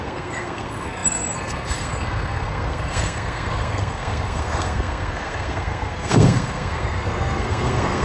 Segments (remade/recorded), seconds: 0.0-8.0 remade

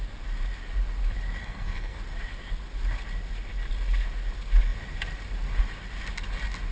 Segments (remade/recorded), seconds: 0.0-1.4 recorded; 1.4-2.0 remade; 2.0-6.7 recorded

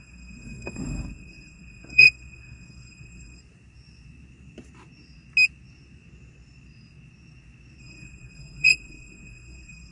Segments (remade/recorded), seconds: 0.0-3.4 remade; 3.4-7.8 recorded; 7.8-9.9 remade

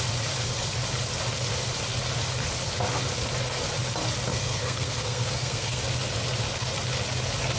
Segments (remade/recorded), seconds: 0.0-4.3 recorded; 4.3-5.8 remade; 5.8-7.6 recorded

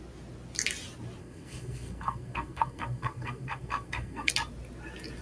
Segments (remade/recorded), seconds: 0.0-1.2 recorded; 1.2-4.3 remade; 4.3-5.2 recorded